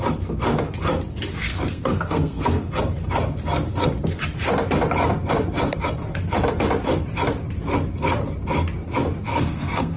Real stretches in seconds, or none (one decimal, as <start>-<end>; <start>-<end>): 0.0-1.4; 2.6-9.3